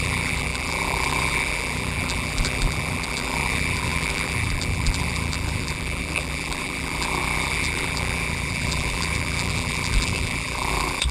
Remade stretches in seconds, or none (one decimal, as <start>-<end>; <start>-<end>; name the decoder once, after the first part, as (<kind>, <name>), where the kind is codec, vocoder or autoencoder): 0.0-11.1 (vocoder, BigVGAN v2)